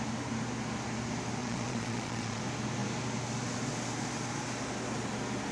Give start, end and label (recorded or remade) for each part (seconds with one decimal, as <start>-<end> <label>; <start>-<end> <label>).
0.0-1.4 recorded; 1.4-2.4 remade; 2.4-5.5 recorded